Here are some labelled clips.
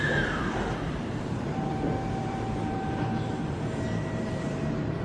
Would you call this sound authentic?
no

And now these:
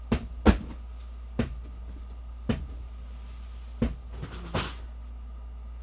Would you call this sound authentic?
yes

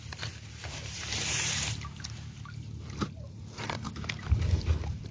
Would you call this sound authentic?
no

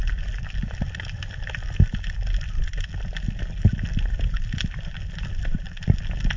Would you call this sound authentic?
yes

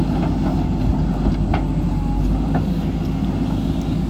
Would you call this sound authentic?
yes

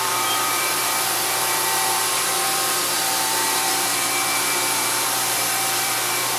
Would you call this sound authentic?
no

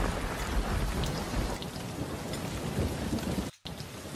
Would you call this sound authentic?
yes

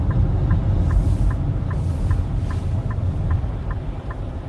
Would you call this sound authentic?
yes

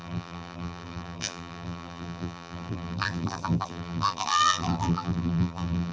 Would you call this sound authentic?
no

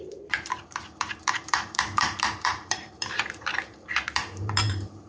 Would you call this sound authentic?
no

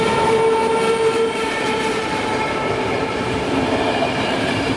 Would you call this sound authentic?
no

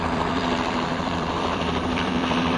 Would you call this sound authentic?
no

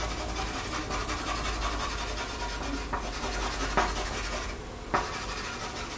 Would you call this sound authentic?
yes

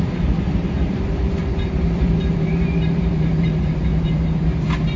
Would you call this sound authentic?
no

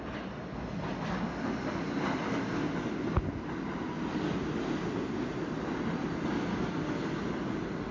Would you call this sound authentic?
yes